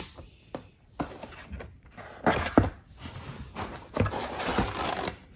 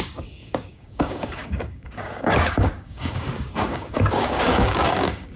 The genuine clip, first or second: first